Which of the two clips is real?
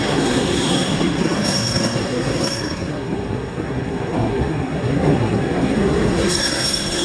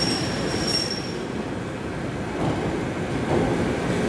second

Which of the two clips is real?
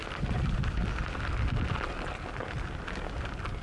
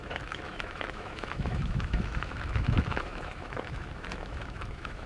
first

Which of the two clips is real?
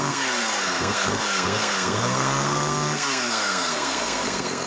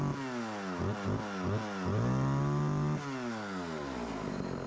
second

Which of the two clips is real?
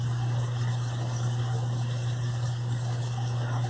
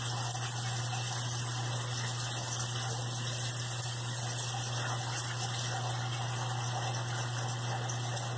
second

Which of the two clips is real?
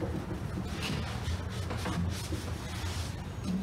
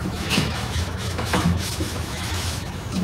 first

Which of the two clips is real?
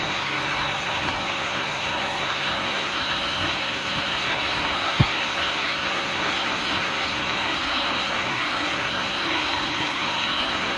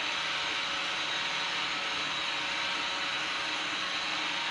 second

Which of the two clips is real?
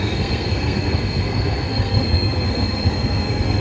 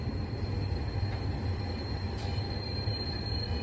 second